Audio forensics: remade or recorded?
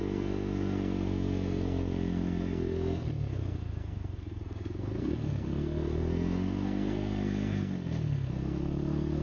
remade